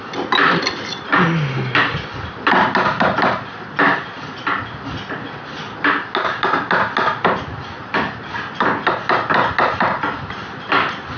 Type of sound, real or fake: real